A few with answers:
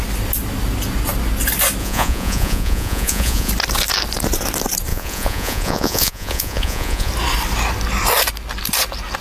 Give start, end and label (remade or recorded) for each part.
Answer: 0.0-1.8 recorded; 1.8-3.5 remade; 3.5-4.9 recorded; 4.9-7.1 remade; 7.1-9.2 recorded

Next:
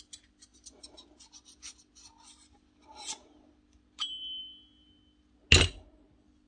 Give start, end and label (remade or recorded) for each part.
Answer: 0.0-6.5 recorded

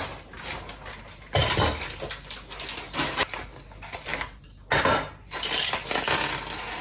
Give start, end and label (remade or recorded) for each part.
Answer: 0.0-6.8 recorded

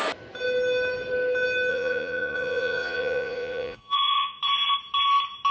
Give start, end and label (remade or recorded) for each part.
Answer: 0.0-1.7 recorded; 1.7-4.4 remade; 4.4-5.5 recorded

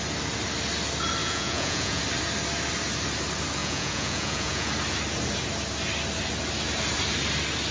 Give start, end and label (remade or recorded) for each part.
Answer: 0.0-1.2 recorded; 1.2-2.0 remade; 2.0-3.6 recorded; 3.6-4.7 remade; 4.7-7.7 recorded